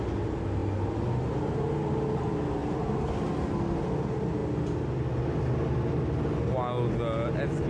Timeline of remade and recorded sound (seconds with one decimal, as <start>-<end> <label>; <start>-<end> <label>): 0.0-7.7 recorded